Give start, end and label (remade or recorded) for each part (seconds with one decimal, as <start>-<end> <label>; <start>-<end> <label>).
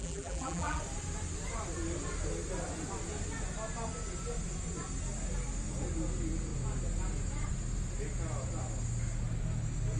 0.0-0.8 remade; 0.8-10.0 recorded